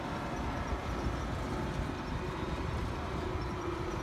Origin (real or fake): real